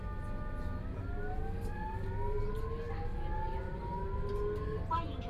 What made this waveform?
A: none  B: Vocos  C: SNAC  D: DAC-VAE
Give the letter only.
A